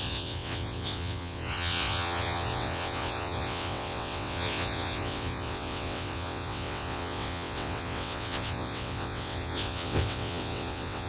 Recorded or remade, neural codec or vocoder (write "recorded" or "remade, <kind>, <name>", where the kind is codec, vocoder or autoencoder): remade, vocoder, WaveNeXt